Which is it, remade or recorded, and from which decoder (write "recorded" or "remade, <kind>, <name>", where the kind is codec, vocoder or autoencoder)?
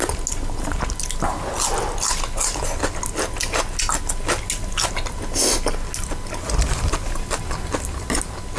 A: recorded